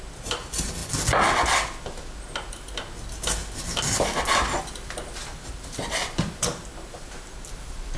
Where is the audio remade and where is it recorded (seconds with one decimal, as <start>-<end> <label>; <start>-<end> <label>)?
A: 0.0-8.0 recorded